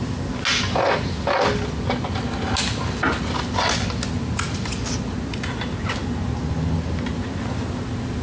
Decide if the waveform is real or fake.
real